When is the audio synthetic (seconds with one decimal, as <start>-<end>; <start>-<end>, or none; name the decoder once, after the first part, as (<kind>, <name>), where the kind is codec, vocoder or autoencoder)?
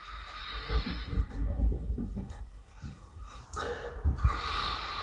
0.4-3.4 (codec, SNAC)